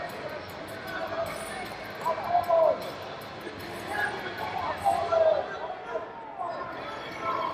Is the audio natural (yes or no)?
yes